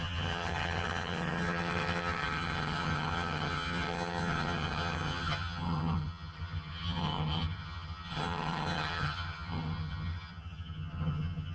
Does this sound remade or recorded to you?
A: remade